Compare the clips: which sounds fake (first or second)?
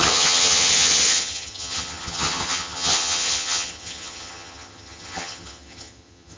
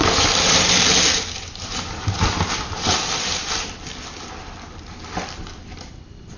first